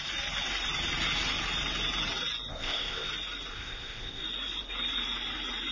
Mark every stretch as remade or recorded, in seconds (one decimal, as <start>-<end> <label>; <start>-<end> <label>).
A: 0.0-2.5 recorded; 2.5-3.1 remade; 3.1-3.5 recorded; 3.5-4.2 remade; 4.2-5.7 recorded